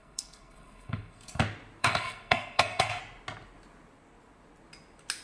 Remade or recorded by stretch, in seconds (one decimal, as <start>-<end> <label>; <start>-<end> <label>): 0.0-1.4 remade; 1.4-1.8 recorded; 1.8-3.0 remade; 3.0-5.2 recorded